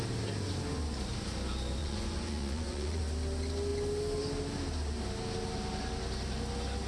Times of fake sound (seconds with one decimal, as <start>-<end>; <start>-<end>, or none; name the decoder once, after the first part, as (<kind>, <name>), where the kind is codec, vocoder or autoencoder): 1.8-3.0 (vocoder, Vocos)